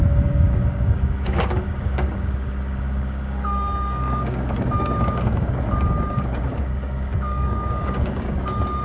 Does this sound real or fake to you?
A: fake